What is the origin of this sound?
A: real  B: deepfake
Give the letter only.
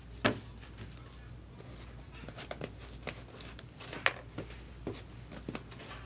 A